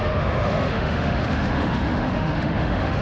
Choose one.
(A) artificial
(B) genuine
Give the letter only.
A